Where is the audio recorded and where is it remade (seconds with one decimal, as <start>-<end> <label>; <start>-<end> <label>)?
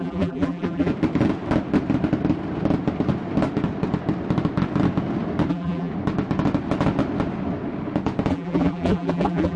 0.0-0.9 remade; 0.9-5.5 recorded; 5.5-5.9 remade; 5.9-8.3 recorded; 8.3-9.6 remade